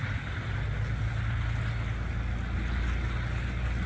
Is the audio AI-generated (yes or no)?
no